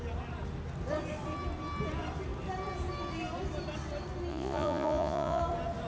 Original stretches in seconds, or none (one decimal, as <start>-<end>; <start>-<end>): 0.0-4.3; 5.4-5.9